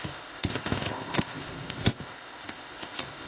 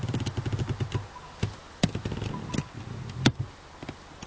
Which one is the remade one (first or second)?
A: first